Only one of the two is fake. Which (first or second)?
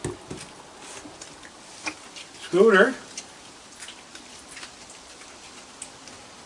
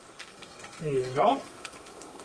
second